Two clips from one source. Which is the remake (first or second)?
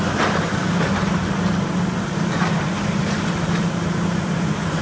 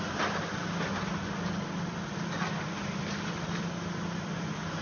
first